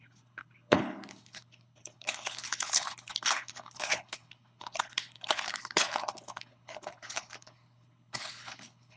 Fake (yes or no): yes